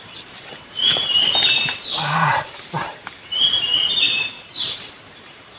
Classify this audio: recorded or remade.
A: remade